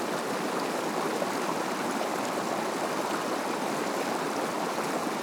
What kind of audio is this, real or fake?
real